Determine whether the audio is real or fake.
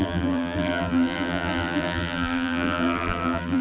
fake